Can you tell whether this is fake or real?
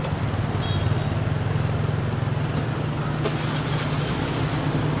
real